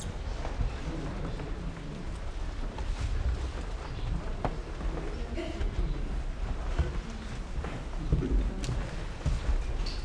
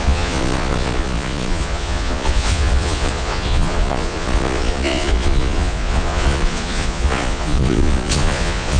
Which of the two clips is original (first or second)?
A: first